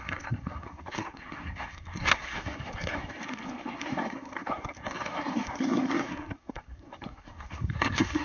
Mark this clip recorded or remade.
remade